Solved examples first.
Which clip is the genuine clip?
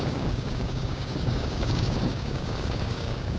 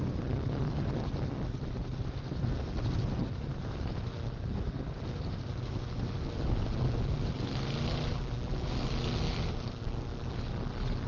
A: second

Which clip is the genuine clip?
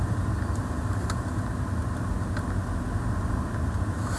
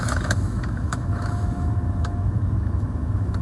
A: first